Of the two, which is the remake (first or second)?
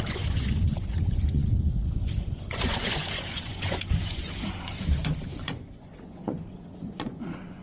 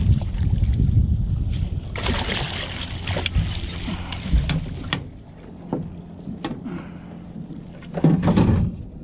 first